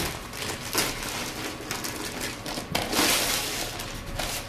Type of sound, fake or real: real